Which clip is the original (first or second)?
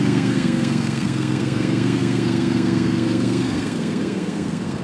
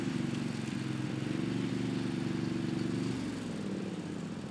second